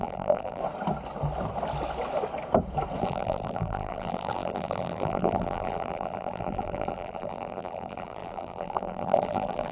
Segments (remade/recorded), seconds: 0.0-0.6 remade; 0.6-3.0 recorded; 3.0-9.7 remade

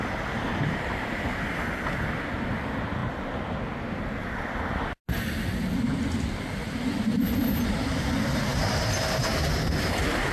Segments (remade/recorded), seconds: 0.0-0.5 recorded; 0.5-1.0 remade; 1.0-6.6 recorded; 6.6-8.0 remade; 8.0-8.5 recorded; 8.5-9.2 remade; 9.2-10.3 recorded

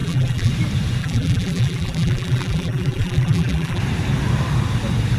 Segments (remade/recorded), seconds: 0.0-0.5 remade; 0.5-1.0 recorded; 1.0-3.8 remade; 3.8-5.2 recorded

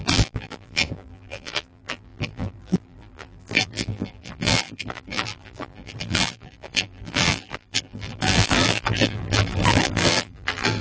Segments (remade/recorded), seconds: 0.0-10.8 remade

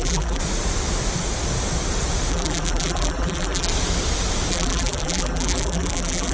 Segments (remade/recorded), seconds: 0.0-0.4 remade; 0.4-2.3 recorded; 2.3-3.7 remade; 3.7-4.5 recorded; 4.5-6.3 remade

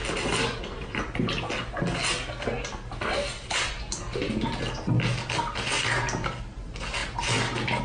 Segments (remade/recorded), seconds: 0.0-7.8 recorded

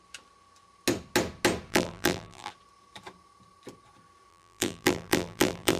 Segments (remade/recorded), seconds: 0.0-1.7 recorded; 1.7-2.5 remade; 2.5-4.3 recorded; 4.3-5.8 remade

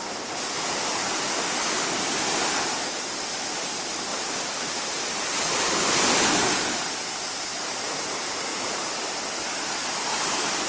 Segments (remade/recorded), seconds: 0.0-4.1 recorded; 4.1-6.2 remade; 6.2-8.5 recorded; 8.5-9.1 remade; 9.1-10.7 recorded